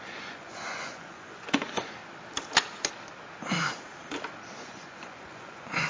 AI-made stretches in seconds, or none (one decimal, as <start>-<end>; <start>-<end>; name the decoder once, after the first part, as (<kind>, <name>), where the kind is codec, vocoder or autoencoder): 0.0-2.0 (vocoder, Vocos); 4.6-5.9